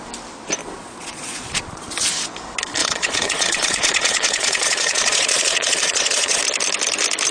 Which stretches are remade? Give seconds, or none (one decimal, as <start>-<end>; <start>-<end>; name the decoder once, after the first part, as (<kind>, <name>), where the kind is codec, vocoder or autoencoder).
0.6-2.1 (vocoder, Vocos); 2.8-6.4